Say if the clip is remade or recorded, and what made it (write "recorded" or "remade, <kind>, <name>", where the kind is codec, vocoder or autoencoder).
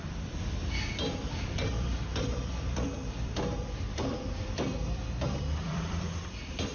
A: remade, vocoder, BigVGAN v2